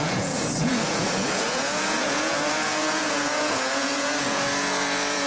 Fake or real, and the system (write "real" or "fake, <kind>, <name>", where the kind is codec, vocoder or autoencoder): fake, vocoder, Vocos